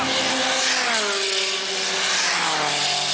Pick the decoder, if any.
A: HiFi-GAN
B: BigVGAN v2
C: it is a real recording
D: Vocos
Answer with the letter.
C